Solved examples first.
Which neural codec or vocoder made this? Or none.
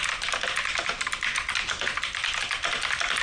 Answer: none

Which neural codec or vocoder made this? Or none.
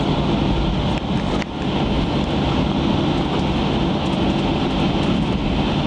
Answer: none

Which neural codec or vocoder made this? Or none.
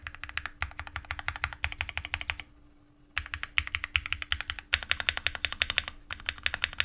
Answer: none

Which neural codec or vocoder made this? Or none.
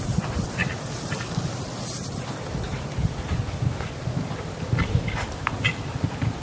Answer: none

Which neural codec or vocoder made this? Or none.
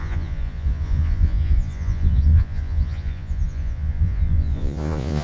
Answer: vocoder, Vocos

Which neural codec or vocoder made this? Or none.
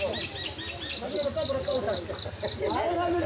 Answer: none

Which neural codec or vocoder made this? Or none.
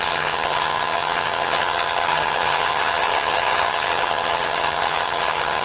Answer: vocoder, HiFi-GAN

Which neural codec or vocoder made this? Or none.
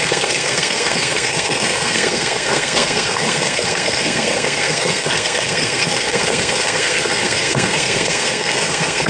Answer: codec, SNAC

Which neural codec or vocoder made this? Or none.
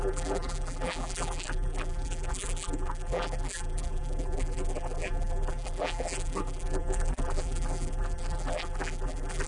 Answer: vocoder, BigVGAN v2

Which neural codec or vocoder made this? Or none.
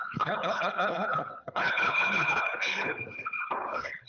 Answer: codec, HILCodec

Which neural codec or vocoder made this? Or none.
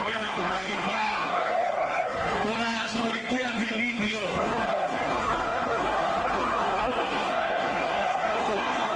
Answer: codec, SNAC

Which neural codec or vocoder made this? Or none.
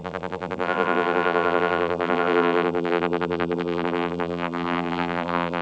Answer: vocoder, BigVGAN v2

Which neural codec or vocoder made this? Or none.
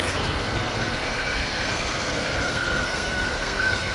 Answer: codec, SNAC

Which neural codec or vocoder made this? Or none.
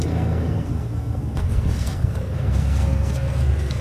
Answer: codec, SNAC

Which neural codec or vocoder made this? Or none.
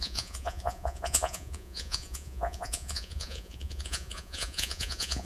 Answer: vocoder, Vocos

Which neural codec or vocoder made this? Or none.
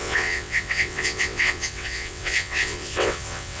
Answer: vocoder, WaveNeXt